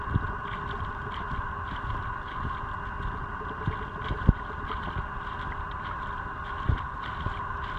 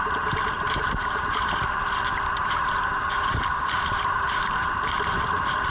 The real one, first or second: first